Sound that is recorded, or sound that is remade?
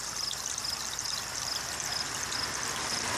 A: recorded